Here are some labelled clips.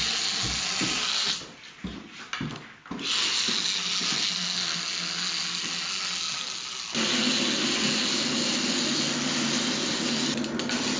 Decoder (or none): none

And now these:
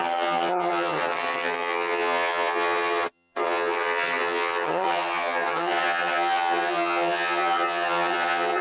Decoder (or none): vocoder, HiFi-GAN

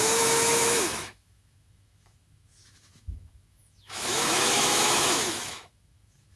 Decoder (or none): autoencoder, DAC-VAE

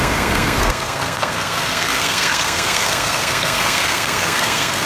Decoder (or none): codec, SNAC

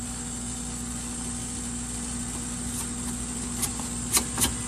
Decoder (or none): none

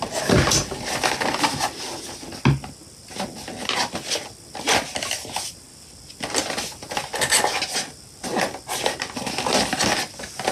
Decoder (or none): none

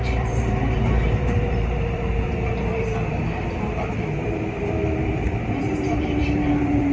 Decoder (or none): vocoder, BigVGAN v2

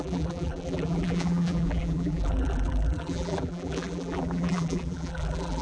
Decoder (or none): vocoder, BigVGAN v2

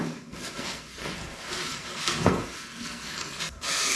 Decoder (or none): codec, SNAC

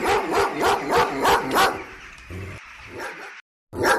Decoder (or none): none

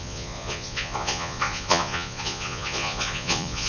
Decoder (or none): vocoder, Vocos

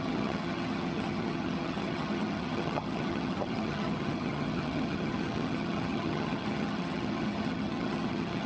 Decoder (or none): vocoder, HiFi-GAN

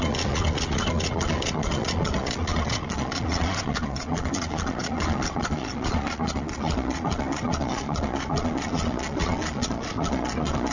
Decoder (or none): vocoder, Vocos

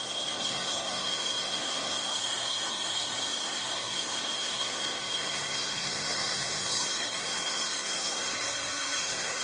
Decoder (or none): codec, SNAC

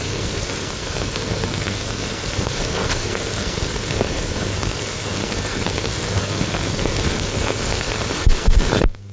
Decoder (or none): codec, SNAC